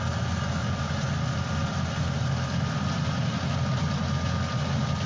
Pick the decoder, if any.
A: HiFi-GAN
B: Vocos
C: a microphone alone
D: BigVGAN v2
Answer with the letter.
C